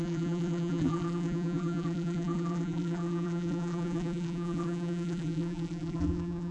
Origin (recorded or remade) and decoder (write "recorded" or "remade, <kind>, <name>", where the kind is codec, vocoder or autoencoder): remade, vocoder, BigVGAN v2